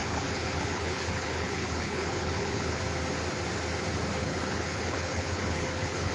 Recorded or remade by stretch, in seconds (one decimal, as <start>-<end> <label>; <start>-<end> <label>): 0.0-2.8 remade; 2.8-4.2 recorded; 4.2-6.1 remade